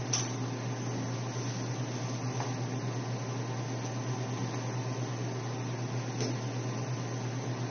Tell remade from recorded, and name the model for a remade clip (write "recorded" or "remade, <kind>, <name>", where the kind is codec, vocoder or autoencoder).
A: recorded